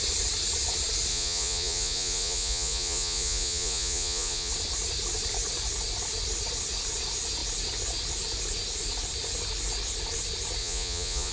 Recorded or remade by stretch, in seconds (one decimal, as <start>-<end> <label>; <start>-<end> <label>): 0.0-1.1 recorded; 1.1-4.5 remade; 4.5-10.6 recorded; 10.6-11.3 remade